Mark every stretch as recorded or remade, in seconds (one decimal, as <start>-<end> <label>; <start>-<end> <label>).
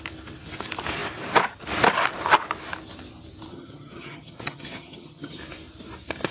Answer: 0.0-3.5 recorded; 3.5-5.4 remade; 5.4-6.3 recorded